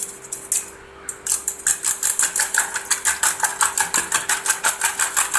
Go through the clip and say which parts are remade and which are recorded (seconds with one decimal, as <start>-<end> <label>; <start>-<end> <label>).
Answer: 0.0-5.4 recorded